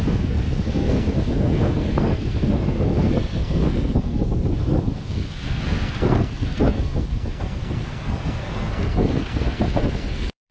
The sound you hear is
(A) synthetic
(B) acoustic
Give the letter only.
A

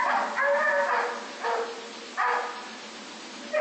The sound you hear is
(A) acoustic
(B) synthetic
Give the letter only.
A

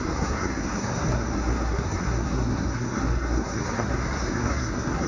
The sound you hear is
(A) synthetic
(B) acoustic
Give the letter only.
A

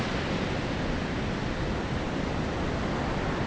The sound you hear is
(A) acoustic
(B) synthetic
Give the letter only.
B